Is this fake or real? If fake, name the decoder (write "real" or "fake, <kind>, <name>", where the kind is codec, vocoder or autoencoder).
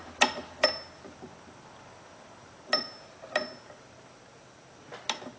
real